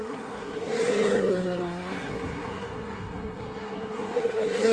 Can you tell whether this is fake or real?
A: fake